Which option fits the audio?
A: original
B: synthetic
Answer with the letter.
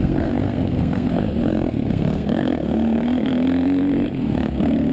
B